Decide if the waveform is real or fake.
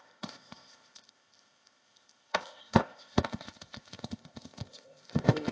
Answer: fake